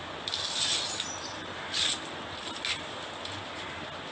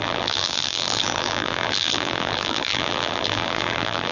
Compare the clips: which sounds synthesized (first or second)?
second